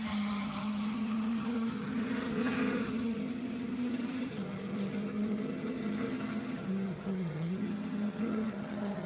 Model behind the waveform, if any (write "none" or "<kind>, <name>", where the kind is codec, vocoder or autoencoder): vocoder, HiFi-GAN